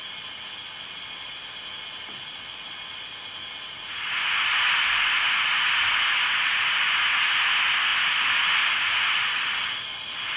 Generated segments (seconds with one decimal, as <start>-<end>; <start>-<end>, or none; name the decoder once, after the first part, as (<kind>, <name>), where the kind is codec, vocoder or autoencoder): none